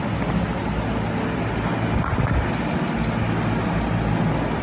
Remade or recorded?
recorded